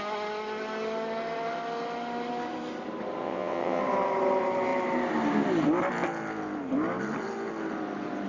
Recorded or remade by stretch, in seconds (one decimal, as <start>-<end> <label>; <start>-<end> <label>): 0.0-3.2 recorded; 3.2-3.8 remade; 3.8-8.3 recorded